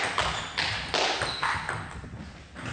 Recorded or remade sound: recorded